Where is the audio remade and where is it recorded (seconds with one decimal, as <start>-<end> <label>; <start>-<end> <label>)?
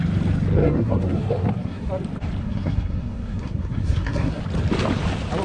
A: 0.0-0.6 recorded; 0.6-1.9 remade; 1.9-2.4 recorded; 2.4-4.4 remade; 4.4-5.4 recorded